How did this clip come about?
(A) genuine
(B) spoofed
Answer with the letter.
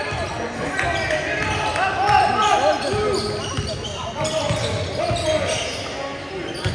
A